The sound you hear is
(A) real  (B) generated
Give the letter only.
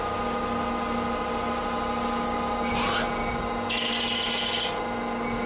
A